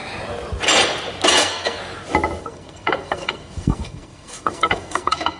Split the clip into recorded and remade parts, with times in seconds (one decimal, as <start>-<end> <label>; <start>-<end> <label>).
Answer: 0.0-1.3 recorded; 1.3-1.8 remade; 1.8-2.4 recorded; 2.4-5.4 remade

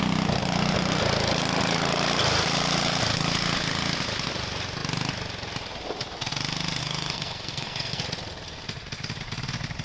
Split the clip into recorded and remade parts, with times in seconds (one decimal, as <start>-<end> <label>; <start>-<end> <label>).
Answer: 0.0-6.8 recorded; 6.8-8.0 remade; 8.0-9.8 recorded